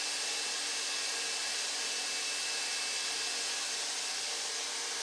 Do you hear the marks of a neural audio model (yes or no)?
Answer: no